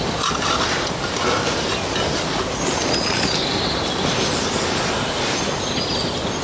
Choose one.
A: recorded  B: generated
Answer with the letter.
A